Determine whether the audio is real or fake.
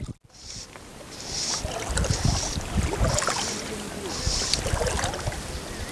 real